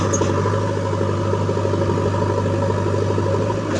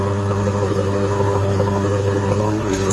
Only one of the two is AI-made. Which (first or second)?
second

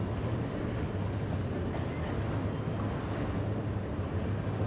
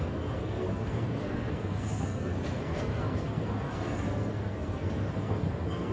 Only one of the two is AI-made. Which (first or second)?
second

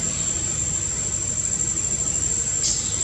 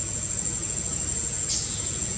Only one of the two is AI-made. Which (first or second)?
second